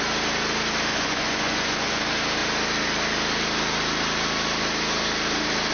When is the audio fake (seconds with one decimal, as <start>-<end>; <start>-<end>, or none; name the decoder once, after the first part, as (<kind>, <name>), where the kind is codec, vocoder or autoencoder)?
0.9-2.0 (vocoder, Vocos)